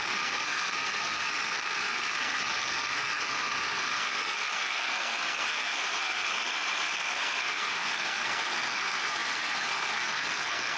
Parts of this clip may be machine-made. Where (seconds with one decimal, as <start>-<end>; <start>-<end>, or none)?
0.0-10.8